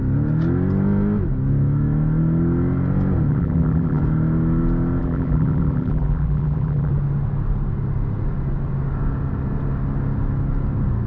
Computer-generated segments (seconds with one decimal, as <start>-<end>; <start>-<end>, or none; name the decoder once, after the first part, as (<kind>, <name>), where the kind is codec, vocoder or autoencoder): 3.3-4.0 (vocoder, BigVGAN v2); 5.0-6.9